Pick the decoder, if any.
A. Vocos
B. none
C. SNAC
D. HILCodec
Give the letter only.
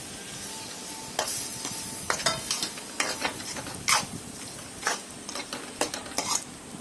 B